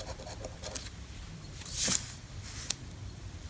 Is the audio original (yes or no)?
no